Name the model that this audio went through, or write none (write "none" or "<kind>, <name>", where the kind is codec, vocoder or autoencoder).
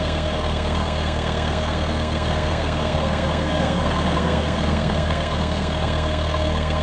codec, SNAC